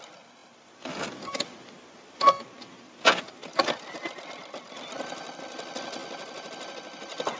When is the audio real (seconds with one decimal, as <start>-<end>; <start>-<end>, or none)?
0.0-7.4